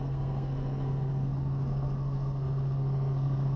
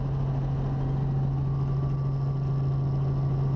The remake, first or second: first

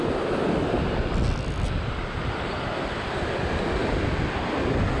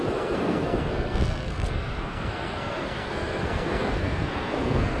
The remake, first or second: second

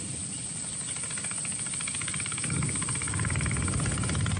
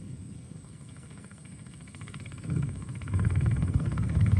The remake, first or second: second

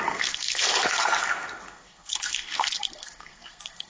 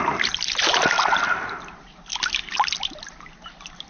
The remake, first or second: first